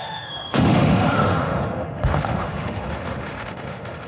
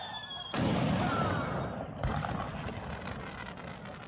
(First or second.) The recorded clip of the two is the second